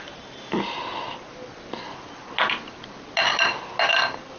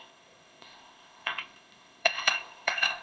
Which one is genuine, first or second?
first